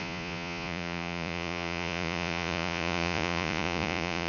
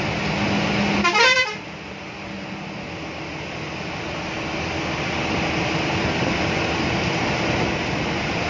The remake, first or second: first